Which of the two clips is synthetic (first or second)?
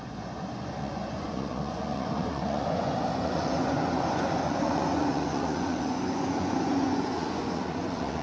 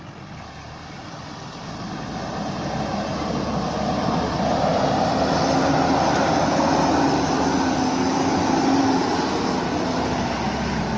first